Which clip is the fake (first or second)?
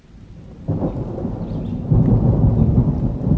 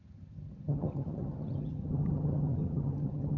second